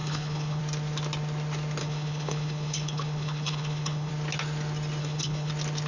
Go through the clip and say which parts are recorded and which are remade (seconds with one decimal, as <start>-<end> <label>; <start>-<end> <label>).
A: 0.0-0.6 remade; 0.6-1.8 recorded; 1.8-4.1 remade; 4.1-5.0 recorded; 5.0-5.5 remade; 5.5-5.9 recorded